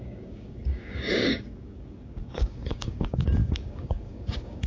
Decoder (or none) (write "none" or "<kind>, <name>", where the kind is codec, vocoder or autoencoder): codec, DAC